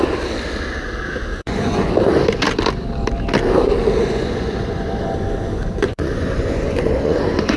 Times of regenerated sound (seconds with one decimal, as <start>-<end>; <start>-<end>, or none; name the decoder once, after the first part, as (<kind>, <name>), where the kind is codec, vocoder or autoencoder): 1.3-1.9 (vocoder, Vocos); 4.0-7.6